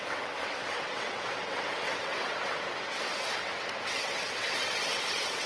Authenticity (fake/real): fake